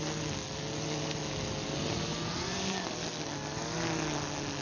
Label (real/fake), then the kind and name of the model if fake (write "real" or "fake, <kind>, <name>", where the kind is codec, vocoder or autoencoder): real